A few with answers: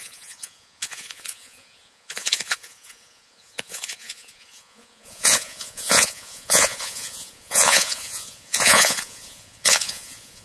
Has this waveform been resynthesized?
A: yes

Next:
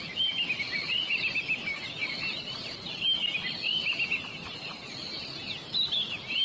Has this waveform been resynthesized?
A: no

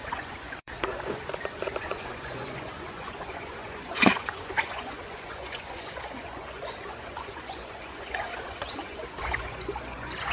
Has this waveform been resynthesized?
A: yes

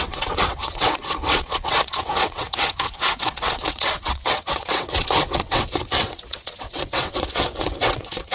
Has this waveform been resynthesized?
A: yes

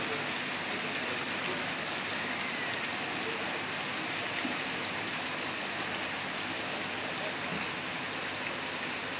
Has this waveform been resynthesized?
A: no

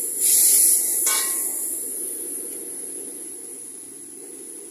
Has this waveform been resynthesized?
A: no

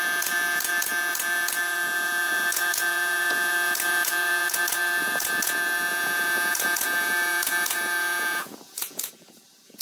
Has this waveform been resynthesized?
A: yes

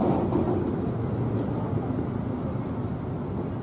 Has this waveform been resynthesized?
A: no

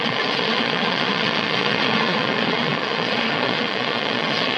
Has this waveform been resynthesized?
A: yes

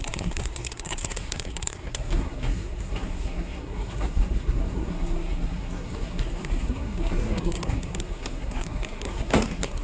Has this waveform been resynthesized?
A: yes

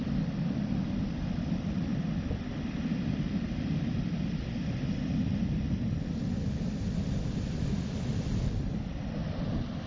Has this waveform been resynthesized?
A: no